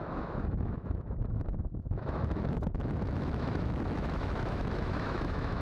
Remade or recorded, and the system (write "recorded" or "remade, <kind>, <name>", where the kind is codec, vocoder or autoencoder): remade, autoencoder, DAC-VAE